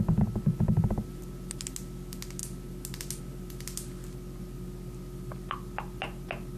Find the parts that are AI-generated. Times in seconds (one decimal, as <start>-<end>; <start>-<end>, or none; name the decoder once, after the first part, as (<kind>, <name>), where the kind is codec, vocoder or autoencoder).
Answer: none